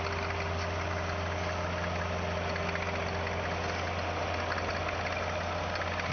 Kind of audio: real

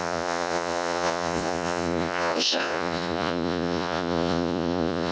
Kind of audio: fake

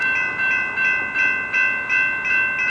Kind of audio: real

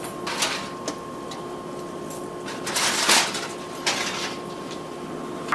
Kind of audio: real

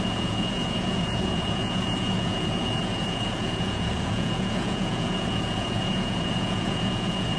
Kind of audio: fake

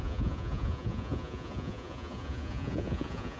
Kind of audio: fake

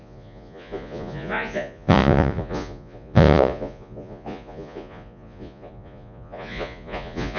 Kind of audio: fake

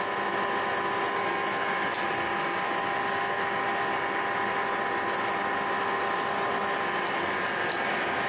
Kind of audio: real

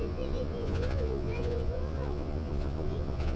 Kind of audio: fake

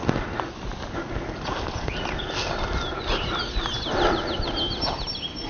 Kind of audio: real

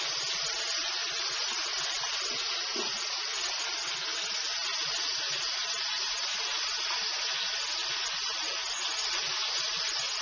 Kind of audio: real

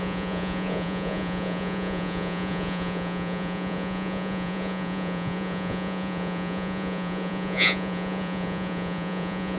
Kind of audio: fake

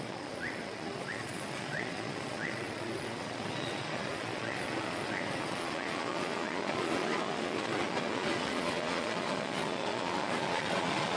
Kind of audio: fake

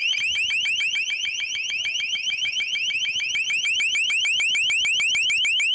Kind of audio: real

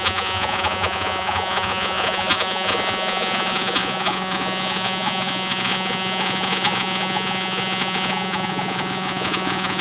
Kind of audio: fake